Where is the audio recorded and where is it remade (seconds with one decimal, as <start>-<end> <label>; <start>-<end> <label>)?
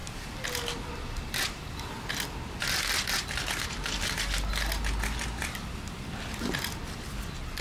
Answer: 0.0-7.6 recorded